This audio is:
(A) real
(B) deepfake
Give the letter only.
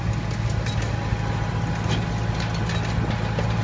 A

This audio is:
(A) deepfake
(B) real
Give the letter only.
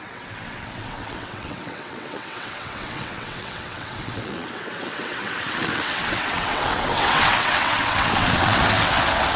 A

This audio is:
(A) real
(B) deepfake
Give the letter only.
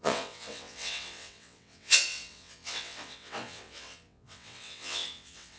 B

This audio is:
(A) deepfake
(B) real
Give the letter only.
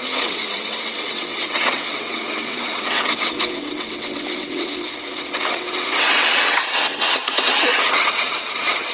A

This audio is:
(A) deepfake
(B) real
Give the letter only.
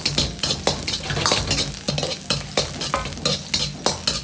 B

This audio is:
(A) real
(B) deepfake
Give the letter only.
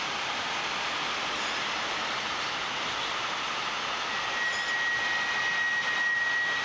A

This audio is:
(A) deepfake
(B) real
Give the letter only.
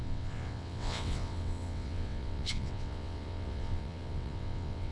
A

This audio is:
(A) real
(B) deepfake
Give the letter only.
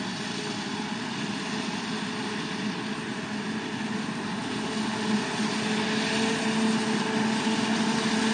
A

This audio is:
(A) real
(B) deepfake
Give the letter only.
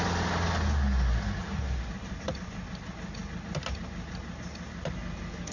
A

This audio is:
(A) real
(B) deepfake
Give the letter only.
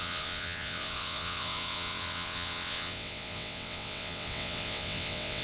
B